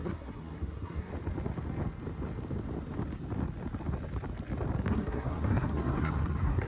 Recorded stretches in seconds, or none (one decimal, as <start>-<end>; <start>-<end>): 1.1-4.9